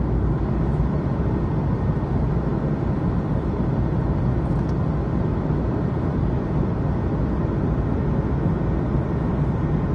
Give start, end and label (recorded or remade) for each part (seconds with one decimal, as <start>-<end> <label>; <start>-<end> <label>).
0.0-9.9 recorded